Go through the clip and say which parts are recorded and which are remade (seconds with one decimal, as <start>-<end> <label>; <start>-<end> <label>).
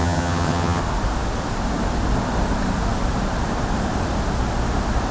0.0-0.8 remade; 0.8-5.1 recorded